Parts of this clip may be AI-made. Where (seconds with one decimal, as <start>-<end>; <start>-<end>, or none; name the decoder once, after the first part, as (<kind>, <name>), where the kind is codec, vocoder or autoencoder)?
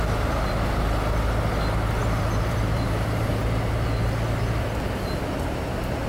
2.0-3.4 (vocoder, BigVGAN v2)